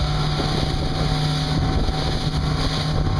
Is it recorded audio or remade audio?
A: recorded